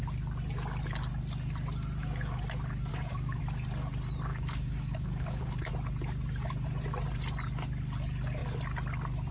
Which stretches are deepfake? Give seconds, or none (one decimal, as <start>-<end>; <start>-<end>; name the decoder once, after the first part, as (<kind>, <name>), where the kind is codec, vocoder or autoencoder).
2.9-3.4 (codec, DAC); 4.3-5.5